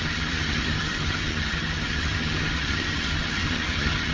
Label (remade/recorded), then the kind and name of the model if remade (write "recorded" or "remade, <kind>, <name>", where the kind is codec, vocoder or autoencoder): remade, vocoder, HiFi-GAN